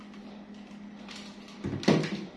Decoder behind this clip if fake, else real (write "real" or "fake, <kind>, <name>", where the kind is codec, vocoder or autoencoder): real